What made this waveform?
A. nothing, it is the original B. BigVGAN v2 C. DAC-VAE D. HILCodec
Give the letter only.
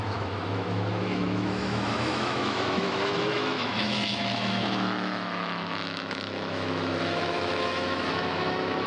C